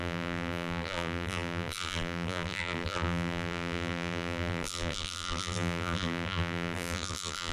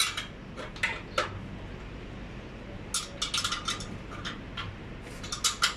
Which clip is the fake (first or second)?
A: first